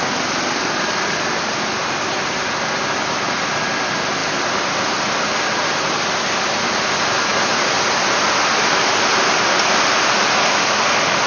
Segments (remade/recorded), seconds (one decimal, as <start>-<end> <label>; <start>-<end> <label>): 0.0-11.3 recorded